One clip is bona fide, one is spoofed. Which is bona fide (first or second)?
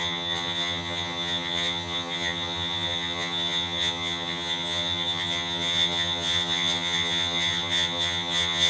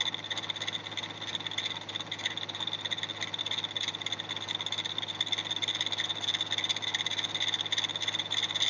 second